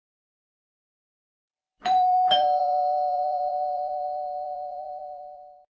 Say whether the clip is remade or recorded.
remade